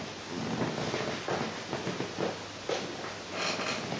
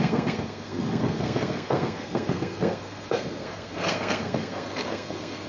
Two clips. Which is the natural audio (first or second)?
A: first